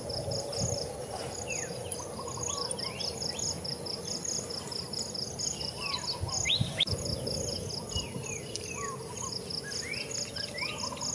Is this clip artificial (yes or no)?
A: no